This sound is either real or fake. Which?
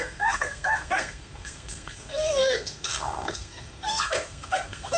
fake